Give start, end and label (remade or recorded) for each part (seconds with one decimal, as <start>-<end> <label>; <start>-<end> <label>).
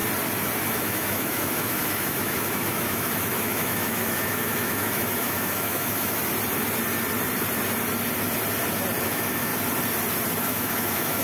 0.0-0.6 recorded; 0.6-6.2 remade; 6.2-9.0 recorded; 9.0-9.5 remade; 9.5-10.4 recorded; 10.4-11.2 remade